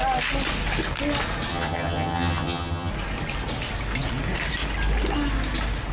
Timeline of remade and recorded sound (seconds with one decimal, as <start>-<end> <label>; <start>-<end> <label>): 0.0-1.5 recorded; 1.5-2.9 remade; 2.9-5.9 recorded